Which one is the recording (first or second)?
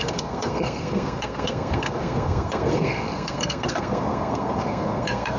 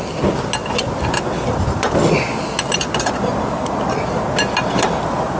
second